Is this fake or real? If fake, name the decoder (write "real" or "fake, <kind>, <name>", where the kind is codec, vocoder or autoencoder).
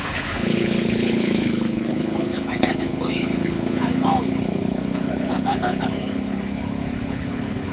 fake, codec, HILCodec